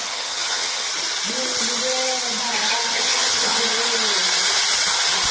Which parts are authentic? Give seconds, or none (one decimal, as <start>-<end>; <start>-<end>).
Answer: 0.9-2.9; 3.6-5.3